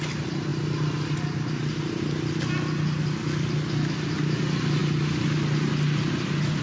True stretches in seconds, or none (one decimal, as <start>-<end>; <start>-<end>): 0.0-6.6